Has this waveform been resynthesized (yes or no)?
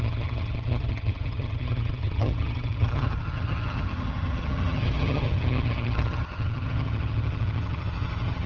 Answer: yes